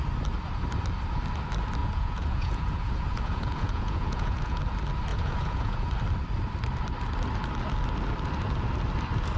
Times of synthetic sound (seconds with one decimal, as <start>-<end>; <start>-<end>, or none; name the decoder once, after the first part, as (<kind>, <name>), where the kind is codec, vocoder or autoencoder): 1.8-4.6 (vocoder, Vocos); 5.1-5.9